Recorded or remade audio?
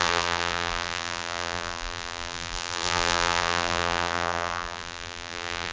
remade